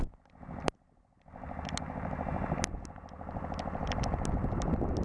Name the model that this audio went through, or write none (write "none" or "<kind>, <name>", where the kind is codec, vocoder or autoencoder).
none